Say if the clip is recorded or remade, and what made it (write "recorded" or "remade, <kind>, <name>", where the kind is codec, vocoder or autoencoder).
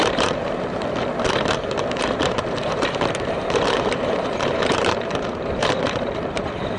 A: remade, vocoder, BigVGAN v2